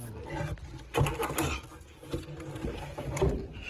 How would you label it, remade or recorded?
recorded